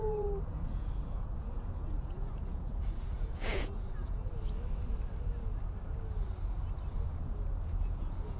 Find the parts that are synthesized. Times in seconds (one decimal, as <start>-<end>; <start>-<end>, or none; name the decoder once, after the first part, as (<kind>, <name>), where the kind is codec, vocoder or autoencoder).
0.0-4.3 (vocoder, Vocos); 6.9-8.4

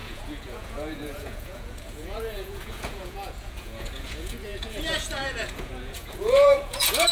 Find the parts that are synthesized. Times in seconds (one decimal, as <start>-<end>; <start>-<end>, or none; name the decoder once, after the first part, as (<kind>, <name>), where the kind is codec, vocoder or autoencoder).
0.0-7.1 (vocoder, Vocos)